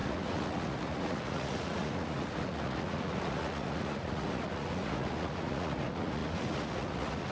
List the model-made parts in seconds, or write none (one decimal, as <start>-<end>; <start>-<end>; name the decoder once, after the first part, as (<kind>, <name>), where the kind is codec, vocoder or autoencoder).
0.0-7.3 (vocoder, Vocos)